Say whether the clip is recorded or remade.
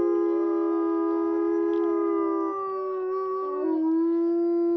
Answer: recorded